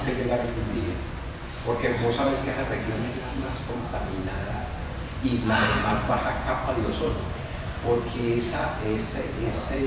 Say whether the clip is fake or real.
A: fake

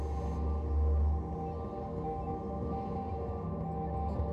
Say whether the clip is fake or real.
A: real